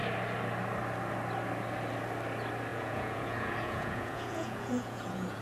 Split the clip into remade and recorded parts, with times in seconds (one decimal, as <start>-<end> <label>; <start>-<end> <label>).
0.0-2.7 recorded; 2.7-5.4 remade